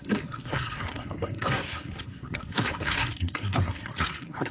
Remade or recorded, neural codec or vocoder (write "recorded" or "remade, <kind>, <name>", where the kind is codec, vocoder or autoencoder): remade, codec, SNAC